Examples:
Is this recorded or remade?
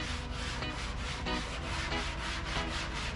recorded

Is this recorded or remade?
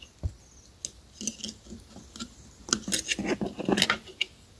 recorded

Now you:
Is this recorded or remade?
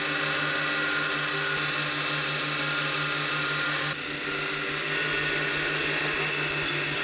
recorded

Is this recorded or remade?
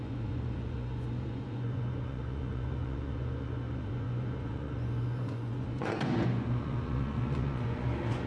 remade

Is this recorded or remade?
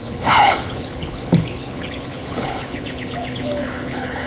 remade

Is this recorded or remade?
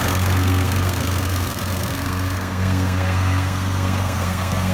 remade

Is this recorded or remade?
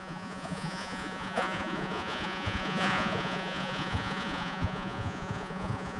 remade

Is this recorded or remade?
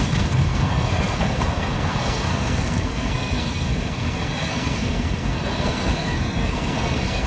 remade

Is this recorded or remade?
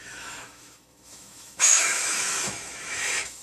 remade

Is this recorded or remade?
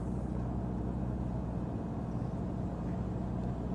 recorded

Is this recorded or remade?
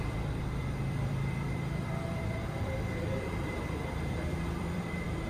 remade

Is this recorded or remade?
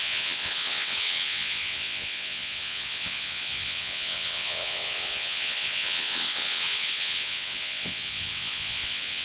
remade